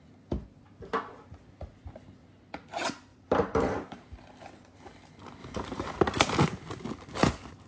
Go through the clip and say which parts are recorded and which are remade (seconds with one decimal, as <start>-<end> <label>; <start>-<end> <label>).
0.0-3.1 recorded; 3.1-4.0 remade; 4.0-5.4 recorded; 5.4-6.0 remade; 6.0-7.7 recorded